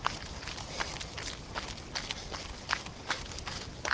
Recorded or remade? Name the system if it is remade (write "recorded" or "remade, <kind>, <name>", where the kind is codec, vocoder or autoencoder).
recorded